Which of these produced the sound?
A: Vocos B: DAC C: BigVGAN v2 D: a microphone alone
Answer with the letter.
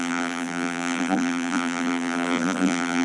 C